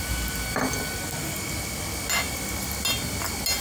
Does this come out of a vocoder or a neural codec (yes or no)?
no